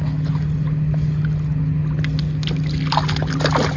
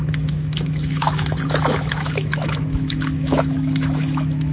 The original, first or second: first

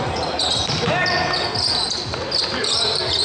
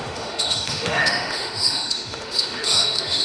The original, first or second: first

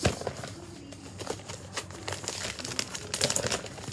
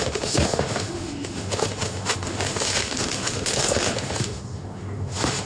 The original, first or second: first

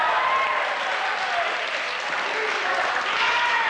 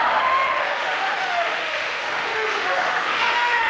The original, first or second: first